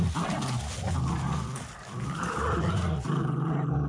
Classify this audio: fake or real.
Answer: real